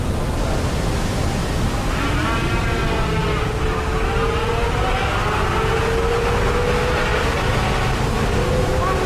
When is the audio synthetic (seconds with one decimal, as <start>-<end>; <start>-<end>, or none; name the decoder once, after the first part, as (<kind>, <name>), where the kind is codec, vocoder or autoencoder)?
none